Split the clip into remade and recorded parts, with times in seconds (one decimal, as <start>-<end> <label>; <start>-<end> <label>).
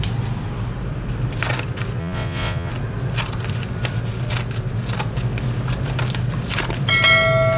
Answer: 0.0-2.0 recorded; 2.0-2.7 remade; 2.7-7.6 recorded